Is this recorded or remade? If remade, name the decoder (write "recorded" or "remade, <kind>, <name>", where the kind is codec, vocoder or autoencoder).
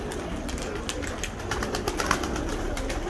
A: recorded